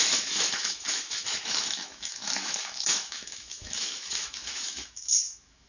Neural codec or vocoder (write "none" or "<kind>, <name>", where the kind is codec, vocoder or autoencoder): autoencoder, DAC-VAE